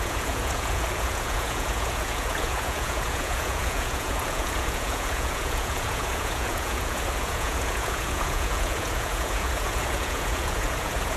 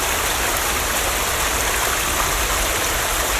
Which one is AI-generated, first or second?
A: first